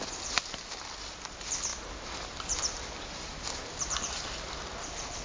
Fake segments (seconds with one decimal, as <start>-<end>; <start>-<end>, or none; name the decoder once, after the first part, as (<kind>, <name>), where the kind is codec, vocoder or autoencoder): none